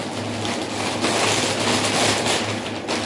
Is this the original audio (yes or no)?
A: yes